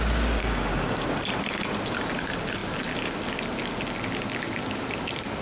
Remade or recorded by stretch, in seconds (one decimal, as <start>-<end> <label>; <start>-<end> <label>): 0.0-0.4 recorded; 0.4-1.1 remade; 1.1-5.4 recorded